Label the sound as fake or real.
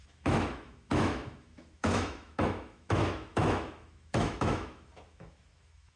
fake